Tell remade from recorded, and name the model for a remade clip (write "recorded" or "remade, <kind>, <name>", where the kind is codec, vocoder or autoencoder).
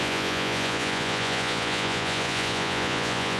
remade, vocoder, Vocos